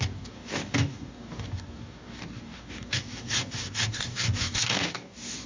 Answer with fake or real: fake